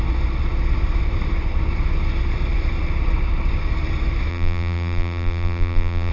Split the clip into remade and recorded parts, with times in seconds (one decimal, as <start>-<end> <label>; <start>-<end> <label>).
0.0-4.3 recorded; 4.3-6.1 remade